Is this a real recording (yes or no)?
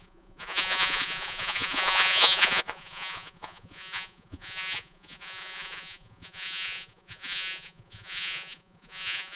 no